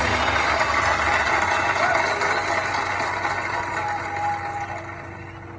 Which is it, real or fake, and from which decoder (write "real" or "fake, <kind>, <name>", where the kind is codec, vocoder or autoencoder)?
real